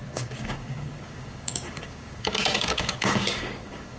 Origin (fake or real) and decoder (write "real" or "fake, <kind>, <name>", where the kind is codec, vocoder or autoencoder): fake, codec, DAC